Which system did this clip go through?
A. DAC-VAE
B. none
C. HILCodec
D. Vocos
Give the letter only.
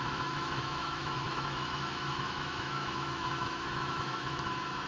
A